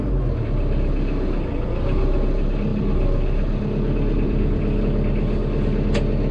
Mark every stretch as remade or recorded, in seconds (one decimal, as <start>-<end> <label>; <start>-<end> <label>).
0.0-2.7 recorded; 2.7-4.8 remade; 4.8-6.3 recorded